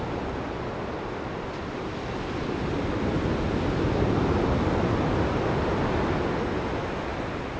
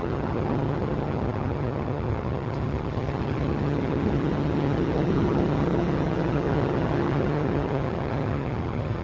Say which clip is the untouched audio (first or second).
first